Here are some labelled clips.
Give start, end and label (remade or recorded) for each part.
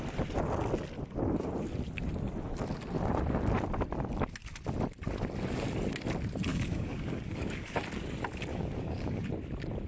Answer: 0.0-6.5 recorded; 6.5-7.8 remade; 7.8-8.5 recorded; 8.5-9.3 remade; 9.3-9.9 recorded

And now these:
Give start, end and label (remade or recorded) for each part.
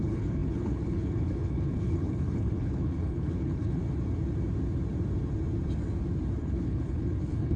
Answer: 0.0-3.8 remade; 3.8-6.4 recorded; 6.4-7.6 remade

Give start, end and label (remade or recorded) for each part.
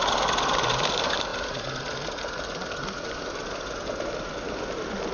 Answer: 0.0-5.1 recorded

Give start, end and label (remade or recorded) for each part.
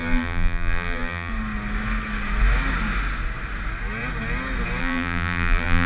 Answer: 0.0-1.3 remade; 1.3-4.8 recorded; 4.8-5.9 remade